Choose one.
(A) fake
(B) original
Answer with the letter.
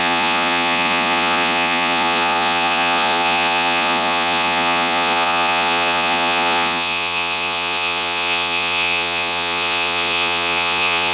A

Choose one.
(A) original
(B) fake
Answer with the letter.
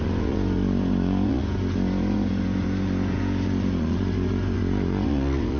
B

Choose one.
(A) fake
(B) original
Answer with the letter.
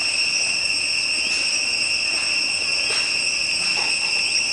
B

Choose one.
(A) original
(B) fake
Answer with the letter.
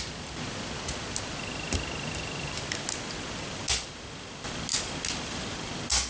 A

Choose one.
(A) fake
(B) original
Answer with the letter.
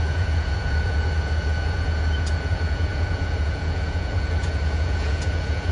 A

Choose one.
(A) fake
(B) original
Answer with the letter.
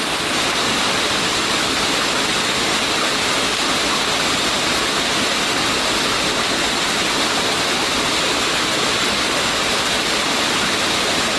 B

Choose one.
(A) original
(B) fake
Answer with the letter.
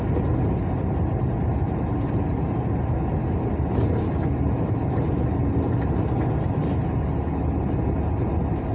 A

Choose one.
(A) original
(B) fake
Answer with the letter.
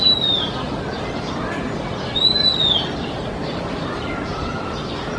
A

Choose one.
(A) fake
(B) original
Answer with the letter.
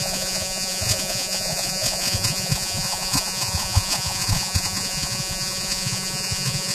A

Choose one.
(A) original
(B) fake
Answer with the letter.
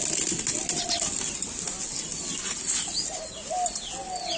A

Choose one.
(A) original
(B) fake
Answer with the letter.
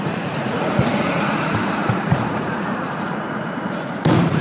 B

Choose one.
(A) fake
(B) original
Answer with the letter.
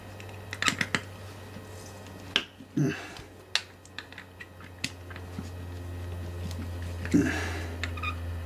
B